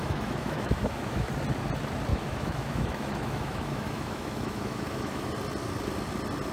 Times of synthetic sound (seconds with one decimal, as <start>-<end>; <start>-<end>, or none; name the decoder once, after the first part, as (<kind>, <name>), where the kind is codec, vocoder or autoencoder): 0.0-1.3 (autoencoder, DAC-VAE); 2.1-5.3